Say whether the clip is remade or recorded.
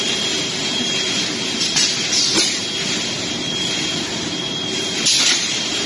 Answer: remade